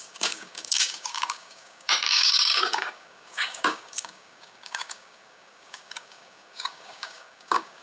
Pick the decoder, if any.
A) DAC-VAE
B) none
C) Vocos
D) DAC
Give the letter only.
D